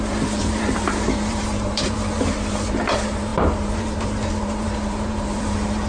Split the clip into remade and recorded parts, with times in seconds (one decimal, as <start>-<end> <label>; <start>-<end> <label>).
0.0-5.9 remade